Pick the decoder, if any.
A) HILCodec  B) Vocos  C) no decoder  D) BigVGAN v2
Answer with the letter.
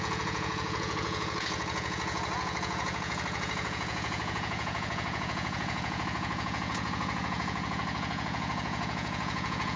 B